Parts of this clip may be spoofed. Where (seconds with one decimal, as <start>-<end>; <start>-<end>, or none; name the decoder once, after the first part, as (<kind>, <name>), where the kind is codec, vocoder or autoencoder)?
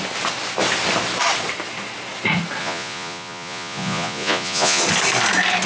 2.6-4.8 (vocoder, Vocos)